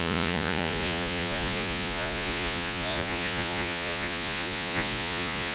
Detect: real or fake fake